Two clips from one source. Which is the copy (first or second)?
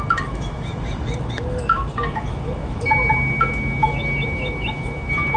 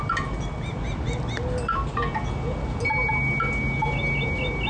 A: first